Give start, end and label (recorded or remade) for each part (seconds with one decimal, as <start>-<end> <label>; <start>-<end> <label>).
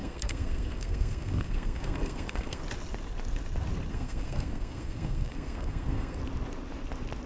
0.0-2.6 remade; 2.6-3.9 recorded; 3.9-6.2 remade; 6.2-7.3 recorded